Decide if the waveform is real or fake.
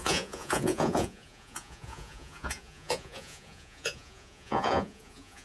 fake